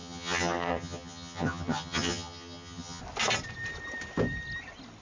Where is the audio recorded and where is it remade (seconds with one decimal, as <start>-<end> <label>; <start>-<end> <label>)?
0.0-3.0 remade; 3.0-5.0 recorded